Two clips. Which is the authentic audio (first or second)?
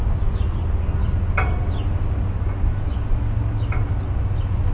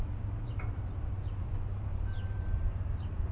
first